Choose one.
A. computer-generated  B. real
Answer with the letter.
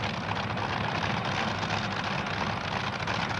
B